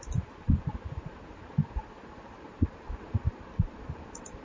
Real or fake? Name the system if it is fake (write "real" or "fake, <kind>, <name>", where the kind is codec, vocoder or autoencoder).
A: fake, vocoder, BigVGAN v2